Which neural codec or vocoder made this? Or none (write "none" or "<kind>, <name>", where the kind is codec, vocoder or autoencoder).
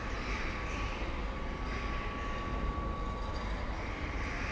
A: none